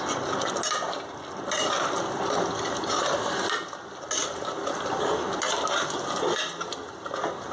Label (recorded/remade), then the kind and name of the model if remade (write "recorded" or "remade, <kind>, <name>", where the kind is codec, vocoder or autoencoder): recorded